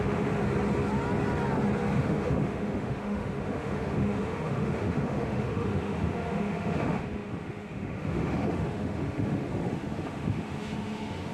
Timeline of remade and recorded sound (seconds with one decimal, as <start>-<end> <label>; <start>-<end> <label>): 0.0-0.4 remade; 0.4-2.0 recorded; 2.0-11.3 remade